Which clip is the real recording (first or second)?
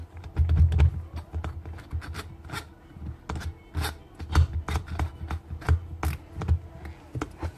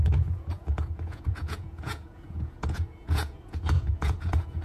first